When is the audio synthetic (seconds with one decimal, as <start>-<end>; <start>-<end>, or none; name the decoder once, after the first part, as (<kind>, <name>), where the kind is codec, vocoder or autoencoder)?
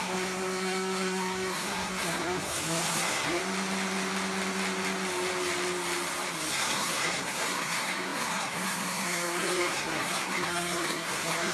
0.0-3.4 (codec, SNAC); 6.5-11.5